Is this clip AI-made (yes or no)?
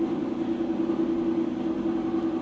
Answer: no